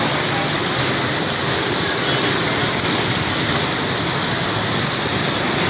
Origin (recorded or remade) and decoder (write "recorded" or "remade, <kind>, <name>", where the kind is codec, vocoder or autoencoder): recorded